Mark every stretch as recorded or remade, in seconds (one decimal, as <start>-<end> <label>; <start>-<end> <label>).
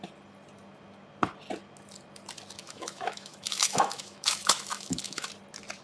0.0-2.6 recorded; 2.6-5.3 remade; 5.3-5.8 recorded